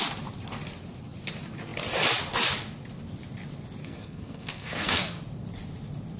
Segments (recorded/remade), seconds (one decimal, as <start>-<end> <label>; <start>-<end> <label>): 0.0-3.8 recorded; 3.8-5.2 remade; 5.2-6.2 recorded